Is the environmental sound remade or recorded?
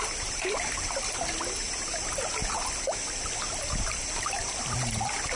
recorded